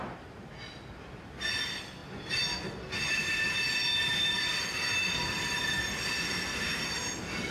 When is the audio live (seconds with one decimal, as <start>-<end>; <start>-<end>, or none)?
0.0-5.0; 5.7-7.5